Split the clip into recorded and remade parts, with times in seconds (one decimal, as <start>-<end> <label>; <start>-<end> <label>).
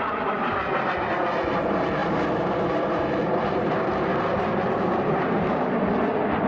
0.0-2.0 recorded; 2.0-5.9 remade; 5.9-6.5 recorded